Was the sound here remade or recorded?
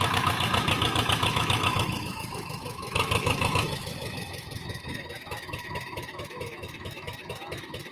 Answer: remade